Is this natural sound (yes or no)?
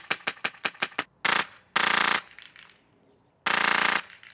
yes